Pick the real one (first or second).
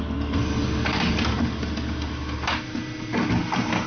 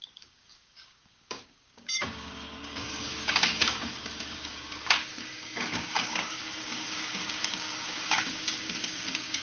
first